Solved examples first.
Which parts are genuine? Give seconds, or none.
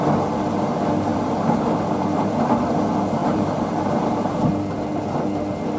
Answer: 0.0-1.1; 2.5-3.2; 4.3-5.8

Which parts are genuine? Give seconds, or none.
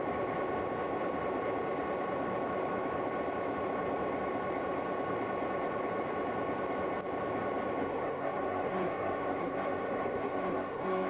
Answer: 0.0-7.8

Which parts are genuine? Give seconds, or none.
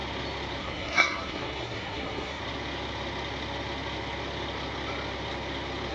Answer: 0.0-0.6; 2.4-5.9